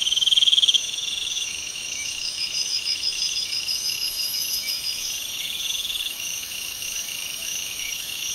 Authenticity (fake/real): fake